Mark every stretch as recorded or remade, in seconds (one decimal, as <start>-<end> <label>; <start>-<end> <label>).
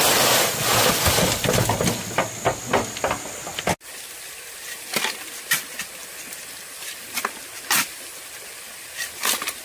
0.0-9.6 recorded